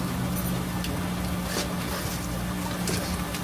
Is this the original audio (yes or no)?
yes